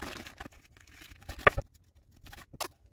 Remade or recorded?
recorded